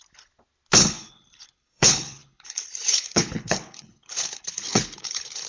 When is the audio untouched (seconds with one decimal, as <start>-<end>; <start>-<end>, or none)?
0.0-0.8